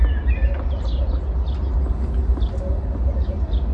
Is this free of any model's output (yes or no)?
yes